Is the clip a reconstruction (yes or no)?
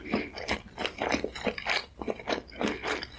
no